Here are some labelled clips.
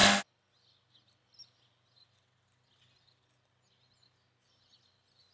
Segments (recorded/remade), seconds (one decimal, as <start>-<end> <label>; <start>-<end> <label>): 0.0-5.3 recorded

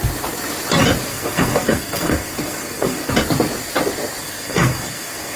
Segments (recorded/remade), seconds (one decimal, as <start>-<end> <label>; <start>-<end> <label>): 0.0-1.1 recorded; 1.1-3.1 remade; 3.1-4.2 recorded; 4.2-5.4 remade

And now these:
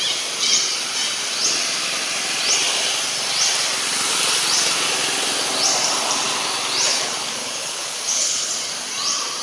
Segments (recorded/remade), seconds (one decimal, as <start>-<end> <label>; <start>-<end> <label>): 0.0-6.9 recorded; 6.9-8.5 remade; 8.5-9.4 recorded